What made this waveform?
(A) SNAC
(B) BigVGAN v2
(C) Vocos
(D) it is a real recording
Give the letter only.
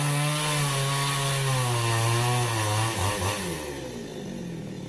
D